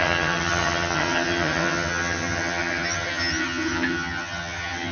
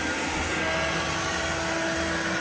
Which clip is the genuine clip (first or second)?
second